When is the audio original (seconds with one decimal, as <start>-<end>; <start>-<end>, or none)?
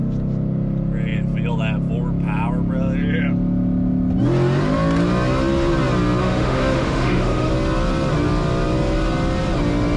0.0-6.2; 7.5-10.0